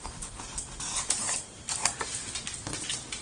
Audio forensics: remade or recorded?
recorded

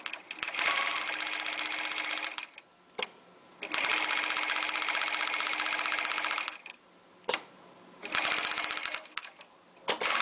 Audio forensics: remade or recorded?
recorded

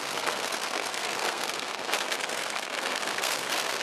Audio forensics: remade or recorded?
remade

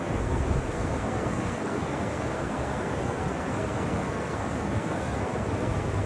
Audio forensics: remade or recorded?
remade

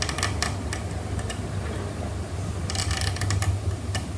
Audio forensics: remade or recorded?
recorded